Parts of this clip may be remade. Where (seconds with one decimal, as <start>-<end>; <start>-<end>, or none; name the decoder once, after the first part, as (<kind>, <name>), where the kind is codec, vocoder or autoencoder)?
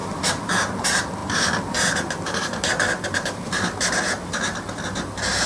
0.0-0.7 (vocoder, BigVGAN v2)